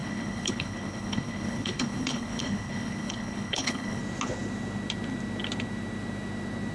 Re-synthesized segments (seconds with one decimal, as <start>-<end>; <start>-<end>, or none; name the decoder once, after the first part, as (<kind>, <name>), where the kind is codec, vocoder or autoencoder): 0.0-4.0 (codec, HILCodec)